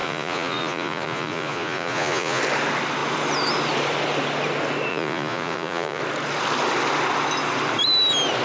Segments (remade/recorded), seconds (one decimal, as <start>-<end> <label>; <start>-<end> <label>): 0.0-2.4 remade; 2.4-4.9 recorded; 4.9-6.0 remade; 6.0-8.4 recorded